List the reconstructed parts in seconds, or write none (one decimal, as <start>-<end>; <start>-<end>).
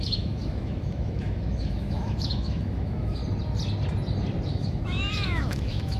0.0-3.2; 4.5-6.0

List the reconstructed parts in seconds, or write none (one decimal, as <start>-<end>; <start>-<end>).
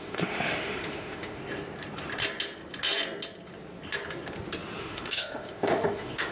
0.0-1.4; 4.8-6.3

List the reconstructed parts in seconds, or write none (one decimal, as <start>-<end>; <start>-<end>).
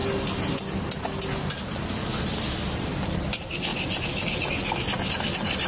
none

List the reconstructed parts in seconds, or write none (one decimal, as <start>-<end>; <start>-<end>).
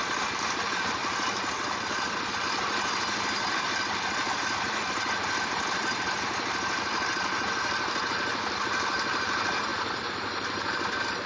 none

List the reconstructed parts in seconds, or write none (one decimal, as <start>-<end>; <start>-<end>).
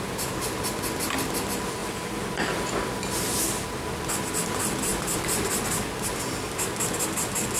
none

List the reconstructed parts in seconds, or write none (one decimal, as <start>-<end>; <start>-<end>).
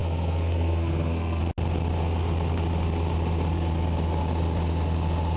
0.0-1.4